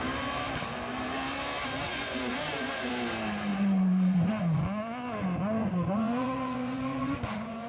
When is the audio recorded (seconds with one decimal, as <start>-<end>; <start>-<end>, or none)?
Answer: 0.0-1.9; 2.9-3.5; 4.3-5.6